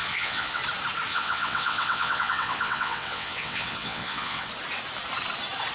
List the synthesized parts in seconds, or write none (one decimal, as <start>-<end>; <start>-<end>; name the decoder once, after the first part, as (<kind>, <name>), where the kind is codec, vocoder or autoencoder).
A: 0.0-0.6 (vocoder, WaveNeXt); 1.1-4.5

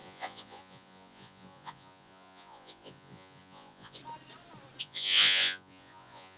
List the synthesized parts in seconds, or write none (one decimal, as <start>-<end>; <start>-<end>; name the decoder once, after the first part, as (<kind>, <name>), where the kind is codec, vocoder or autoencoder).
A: 0.0-4.0 (vocoder, Vocos); 4.8-6.4

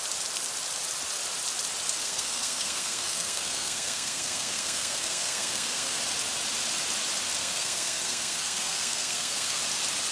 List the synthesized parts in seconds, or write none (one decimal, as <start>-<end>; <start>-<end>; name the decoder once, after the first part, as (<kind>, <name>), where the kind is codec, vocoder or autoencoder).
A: 2.0-6.0 (codec, SNAC); 7.4-9.6

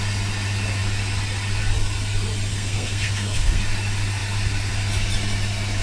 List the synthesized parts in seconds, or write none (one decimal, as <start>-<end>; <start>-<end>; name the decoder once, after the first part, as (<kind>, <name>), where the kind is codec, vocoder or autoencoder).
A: 2.5-3.6 (codec, SNAC)

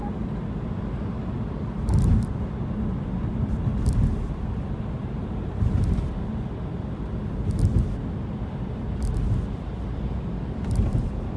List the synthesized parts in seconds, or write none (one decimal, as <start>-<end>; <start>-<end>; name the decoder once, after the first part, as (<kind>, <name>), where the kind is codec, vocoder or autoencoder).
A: none